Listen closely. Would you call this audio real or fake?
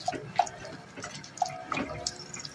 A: real